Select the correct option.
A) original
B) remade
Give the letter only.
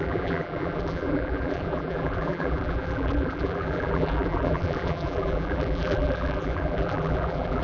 B